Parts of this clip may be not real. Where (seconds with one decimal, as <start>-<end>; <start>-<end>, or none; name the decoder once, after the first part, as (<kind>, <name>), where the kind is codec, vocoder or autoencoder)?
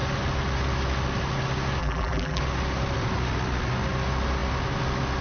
1.8-2.4 (vocoder, BigVGAN v2)